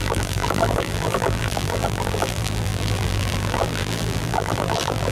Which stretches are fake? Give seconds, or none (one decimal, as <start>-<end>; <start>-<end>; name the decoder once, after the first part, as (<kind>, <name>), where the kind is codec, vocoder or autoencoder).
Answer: 0.0-5.1 (vocoder, BigVGAN v2)